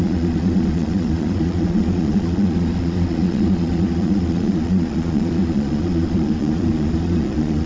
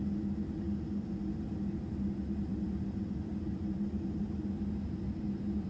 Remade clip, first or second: first